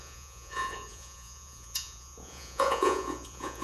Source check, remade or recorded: remade